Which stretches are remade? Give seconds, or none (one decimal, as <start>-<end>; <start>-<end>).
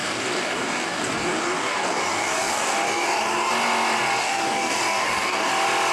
0.0-3.5; 4.2-5.5